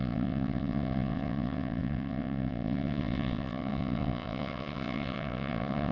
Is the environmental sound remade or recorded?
remade